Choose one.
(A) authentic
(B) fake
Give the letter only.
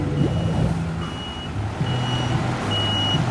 A